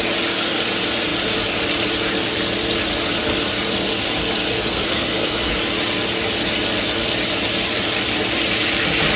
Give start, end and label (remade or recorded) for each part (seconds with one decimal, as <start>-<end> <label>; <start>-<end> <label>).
0.0-4.5 recorded; 4.5-5.5 remade; 5.5-9.2 recorded